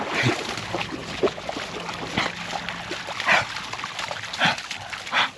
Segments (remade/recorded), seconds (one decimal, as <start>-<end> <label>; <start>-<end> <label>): 0.0-5.4 recorded